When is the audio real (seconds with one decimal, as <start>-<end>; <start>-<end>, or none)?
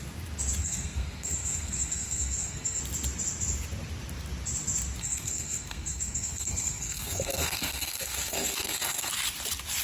0.0-0.6; 2.8-5.0; 9.1-9.8